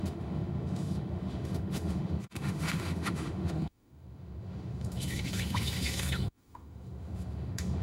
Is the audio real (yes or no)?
no